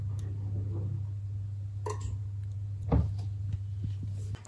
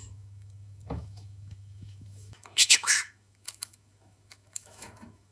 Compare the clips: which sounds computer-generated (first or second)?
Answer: second